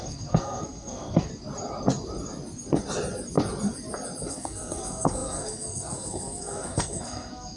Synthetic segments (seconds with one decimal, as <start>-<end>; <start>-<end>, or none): 0.0-1.3; 4.3-7.6